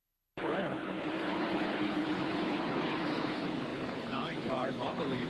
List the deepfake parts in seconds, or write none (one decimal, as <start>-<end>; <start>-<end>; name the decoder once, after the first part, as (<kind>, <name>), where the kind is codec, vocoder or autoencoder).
0.0-5.3 (codec, HILCodec)